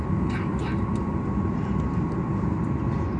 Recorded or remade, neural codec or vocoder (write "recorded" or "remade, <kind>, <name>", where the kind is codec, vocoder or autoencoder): recorded